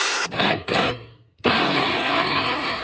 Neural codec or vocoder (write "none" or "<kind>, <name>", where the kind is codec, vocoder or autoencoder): codec, SNAC